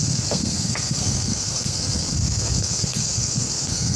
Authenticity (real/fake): fake